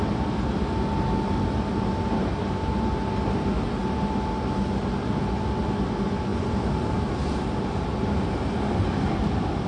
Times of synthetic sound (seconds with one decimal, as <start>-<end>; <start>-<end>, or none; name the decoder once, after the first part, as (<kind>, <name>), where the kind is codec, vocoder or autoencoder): none